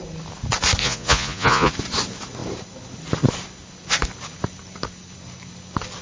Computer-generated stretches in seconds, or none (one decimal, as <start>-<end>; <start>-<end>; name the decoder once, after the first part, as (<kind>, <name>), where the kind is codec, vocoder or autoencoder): 0.8-1.7 (vocoder, Vocos)